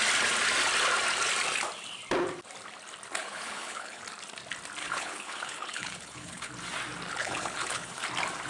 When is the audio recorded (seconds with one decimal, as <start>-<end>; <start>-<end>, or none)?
0.0-3.2; 4.0-4.8; 6.5-7.2; 8.0-8.5